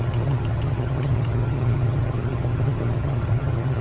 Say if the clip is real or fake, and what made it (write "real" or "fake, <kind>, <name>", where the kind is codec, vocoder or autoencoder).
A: fake, vocoder, HiFi-GAN